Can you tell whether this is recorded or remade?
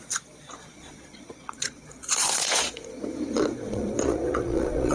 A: remade